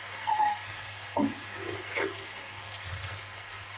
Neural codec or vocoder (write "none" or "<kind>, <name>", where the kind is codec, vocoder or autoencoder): codec, SNAC